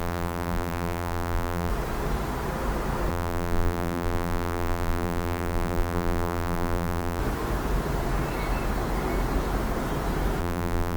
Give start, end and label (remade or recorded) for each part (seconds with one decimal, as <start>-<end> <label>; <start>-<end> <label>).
0.0-1.7 remade; 1.7-3.1 recorded; 3.1-7.2 remade; 7.2-10.4 recorded; 10.4-11.0 remade